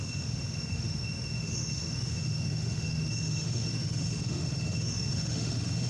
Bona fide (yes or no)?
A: no